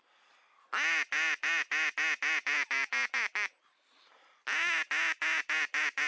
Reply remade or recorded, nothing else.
recorded